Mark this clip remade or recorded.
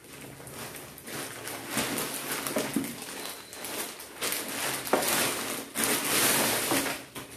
recorded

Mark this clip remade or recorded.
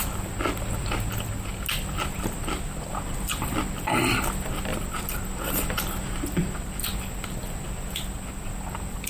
recorded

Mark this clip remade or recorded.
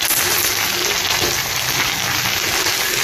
recorded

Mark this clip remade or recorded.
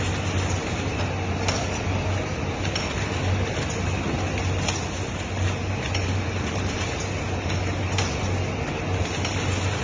recorded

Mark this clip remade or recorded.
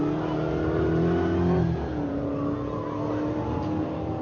recorded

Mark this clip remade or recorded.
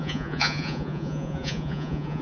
remade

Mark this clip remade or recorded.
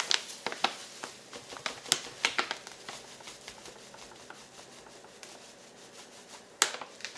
recorded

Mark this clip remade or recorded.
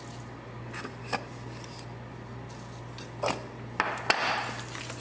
recorded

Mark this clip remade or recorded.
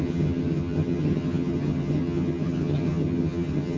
remade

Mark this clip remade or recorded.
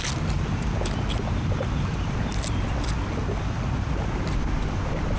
recorded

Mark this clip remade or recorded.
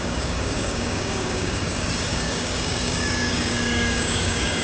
remade